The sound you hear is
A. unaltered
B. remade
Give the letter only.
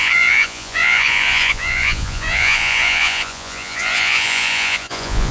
B